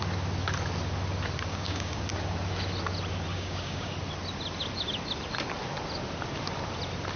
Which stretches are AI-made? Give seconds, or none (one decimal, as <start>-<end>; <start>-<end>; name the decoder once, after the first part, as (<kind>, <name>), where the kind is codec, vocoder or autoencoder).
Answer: 1.5-2.0 (codec, DAC); 3.3-3.9